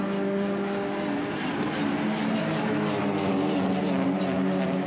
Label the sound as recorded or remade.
recorded